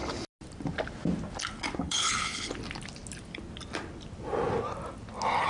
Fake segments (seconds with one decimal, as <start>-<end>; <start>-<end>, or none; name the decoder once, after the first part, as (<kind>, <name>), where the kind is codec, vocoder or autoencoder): 1.8-2.5 (codec, HILCodec)